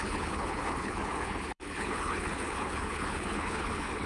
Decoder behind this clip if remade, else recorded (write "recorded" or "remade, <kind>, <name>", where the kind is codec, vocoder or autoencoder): remade, codec, HILCodec